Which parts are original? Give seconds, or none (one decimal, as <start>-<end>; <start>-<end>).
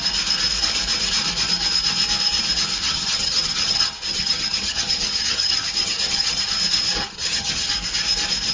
0.0-2.8; 6.5-7.0; 7.7-8.5